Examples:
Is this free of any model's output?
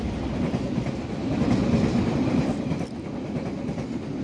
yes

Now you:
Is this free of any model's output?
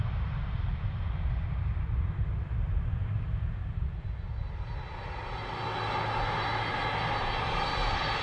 yes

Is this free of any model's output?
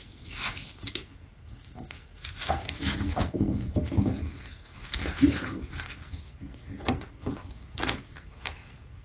no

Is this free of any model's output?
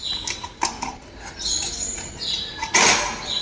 yes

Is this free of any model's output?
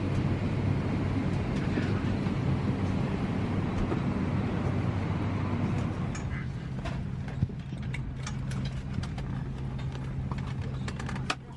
yes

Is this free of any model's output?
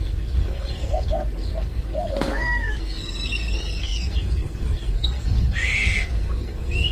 no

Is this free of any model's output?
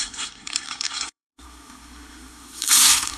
no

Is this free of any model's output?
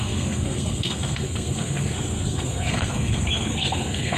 no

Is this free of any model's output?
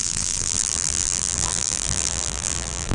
no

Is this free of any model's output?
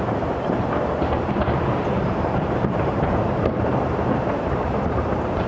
no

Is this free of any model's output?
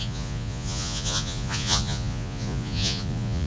no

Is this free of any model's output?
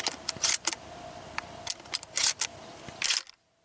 yes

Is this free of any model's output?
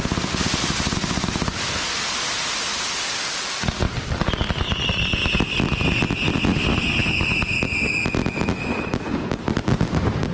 yes